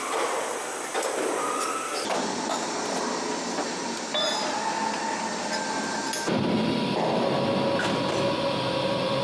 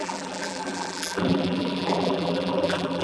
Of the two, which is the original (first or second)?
first